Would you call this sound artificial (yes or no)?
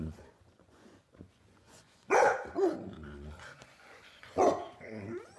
yes